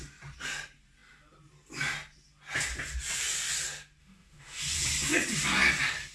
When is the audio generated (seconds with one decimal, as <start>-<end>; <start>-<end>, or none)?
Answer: 4.0-4.6